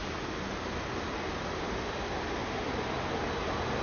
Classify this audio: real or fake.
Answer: real